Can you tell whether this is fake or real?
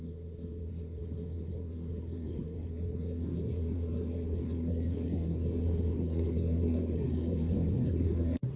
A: fake